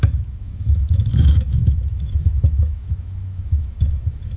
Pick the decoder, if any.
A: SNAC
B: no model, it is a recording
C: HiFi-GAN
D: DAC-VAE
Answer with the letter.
D